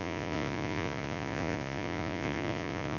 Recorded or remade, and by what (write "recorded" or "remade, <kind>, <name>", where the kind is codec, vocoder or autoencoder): remade, vocoder, Vocos